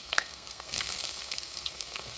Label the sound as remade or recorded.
remade